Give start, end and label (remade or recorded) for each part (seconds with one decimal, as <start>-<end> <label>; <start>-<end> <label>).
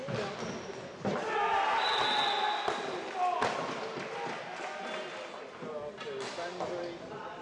0.0-7.4 recorded